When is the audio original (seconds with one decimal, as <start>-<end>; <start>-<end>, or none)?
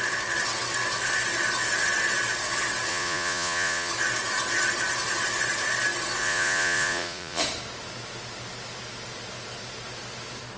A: 0.0-2.9; 3.9-6.2; 7.4-10.6